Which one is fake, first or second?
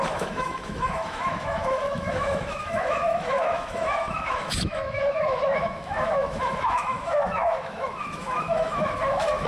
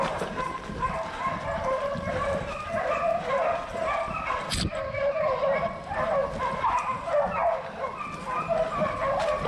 first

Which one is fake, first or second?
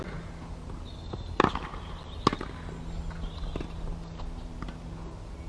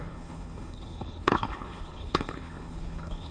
second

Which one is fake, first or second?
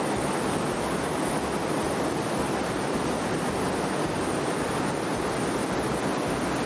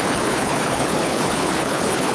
second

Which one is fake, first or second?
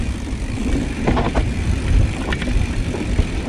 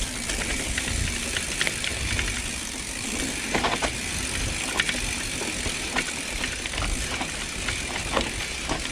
first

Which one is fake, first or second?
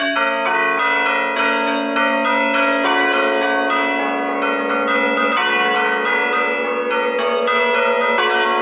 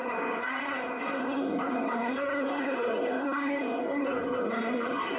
second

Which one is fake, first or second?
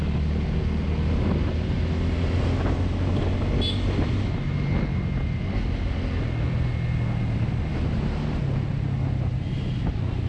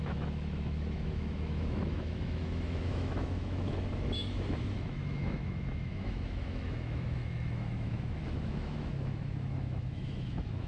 second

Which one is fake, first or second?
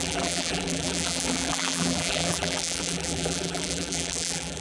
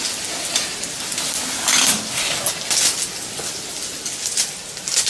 first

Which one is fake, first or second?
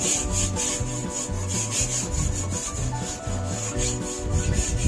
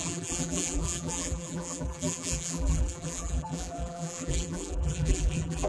second